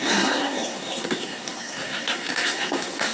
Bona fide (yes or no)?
no